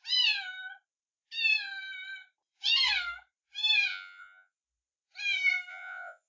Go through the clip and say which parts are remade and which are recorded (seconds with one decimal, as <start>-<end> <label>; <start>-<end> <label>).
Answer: 0.0-3.9 recorded; 3.9-4.6 remade; 4.6-5.7 recorded; 5.7-6.3 remade